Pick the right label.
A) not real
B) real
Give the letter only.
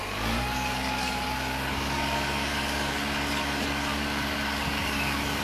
A